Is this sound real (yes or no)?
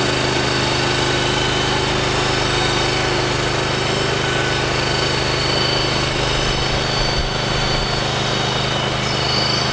yes